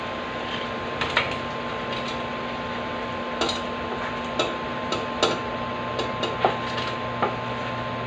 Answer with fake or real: real